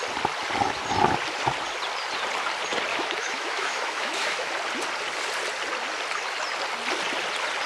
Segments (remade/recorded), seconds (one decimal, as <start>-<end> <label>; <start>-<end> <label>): 0.0-2.9 recorded; 2.9-4.5 remade; 4.5-7.7 recorded